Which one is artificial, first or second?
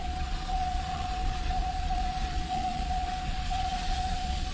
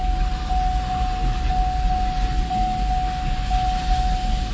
first